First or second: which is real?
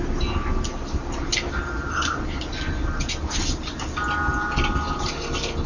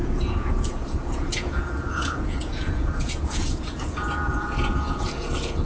first